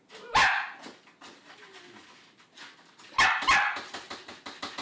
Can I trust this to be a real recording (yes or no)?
yes